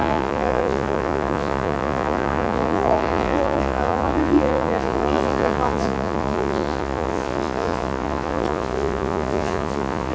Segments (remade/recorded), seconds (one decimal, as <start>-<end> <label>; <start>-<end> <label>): 0.0-10.1 remade

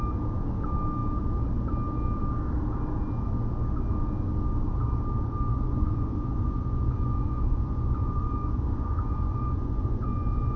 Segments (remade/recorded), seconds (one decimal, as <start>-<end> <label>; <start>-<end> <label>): 0.0-5.5 recorded; 5.5-10.6 remade

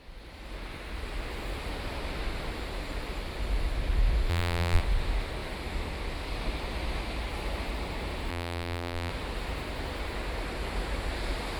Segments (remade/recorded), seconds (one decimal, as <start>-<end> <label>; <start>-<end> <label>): 0.0-4.3 recorded; 4.3-4.8 remade; 4.8-8.3 recorded; 8.3-9.1 remade; 9.1-11.6 recorded

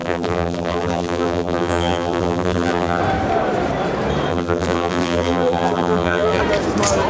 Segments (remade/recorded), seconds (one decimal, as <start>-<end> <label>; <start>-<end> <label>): 0.0-3.0 remade; 3.0-4.3 recorded; 4.3-6.4 remade; 6.4-7.1 recorded

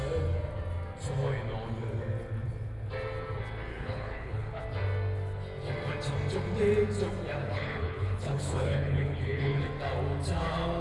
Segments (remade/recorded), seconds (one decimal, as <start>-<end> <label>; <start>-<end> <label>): 0.0-3.7 recorded; 3.7-4.6 remade; 4.6-7.4 recorded; 7.4-9.6 remade; 9.6-10.8 recorded

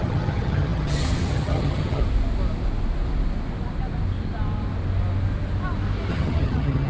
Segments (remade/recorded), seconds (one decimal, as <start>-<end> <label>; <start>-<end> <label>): 0.0-2.0 remade; 2.0-6.1 recorded; 6.1-6.9 remade